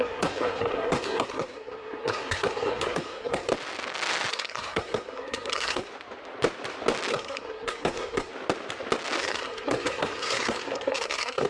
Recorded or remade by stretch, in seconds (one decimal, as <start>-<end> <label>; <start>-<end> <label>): 0.0-3.5 remade; 3.5-4.3 recorded; 4.3-5.9 remade; 5.9-7.1 recorded; 7.1-8.3 remade; 8.3-9.2 recorded; 9.2-11.5 remade